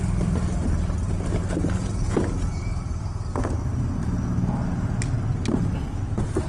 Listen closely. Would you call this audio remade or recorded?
recorded